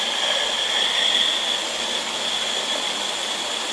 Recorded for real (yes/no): yes